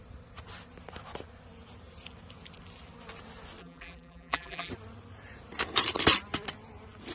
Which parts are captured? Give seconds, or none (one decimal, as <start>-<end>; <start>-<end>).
0.0-3.6; 4.7-7.1